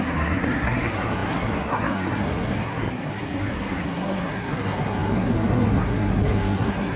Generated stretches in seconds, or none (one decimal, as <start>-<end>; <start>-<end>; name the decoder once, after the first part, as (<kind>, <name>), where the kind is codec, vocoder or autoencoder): 0.0-7.0 (codec, SNAC)